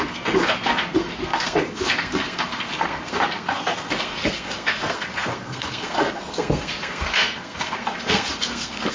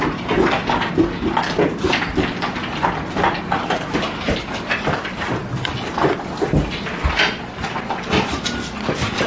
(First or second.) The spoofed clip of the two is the first